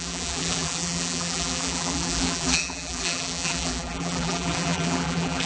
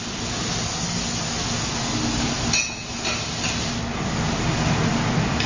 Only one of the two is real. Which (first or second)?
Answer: second